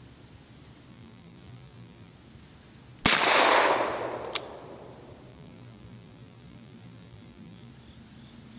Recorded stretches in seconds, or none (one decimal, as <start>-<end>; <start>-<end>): 0.0-0.9; 2.1-5.3; 7.7-8.6